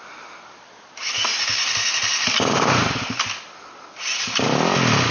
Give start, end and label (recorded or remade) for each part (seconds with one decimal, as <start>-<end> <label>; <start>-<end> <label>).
0.0-5.1 recorded